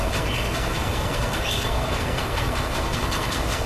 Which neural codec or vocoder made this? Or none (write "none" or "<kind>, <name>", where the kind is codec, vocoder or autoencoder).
codec, SNAC